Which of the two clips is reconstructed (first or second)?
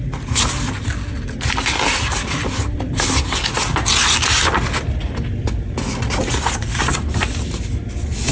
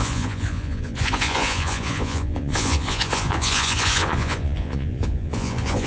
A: second